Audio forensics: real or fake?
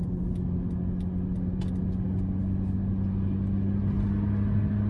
real